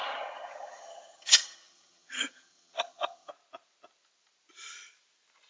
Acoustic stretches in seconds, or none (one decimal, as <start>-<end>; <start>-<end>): 3.3-5.5